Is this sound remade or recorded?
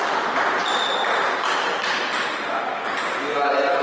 recorded